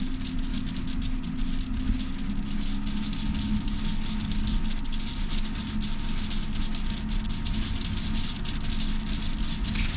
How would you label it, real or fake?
real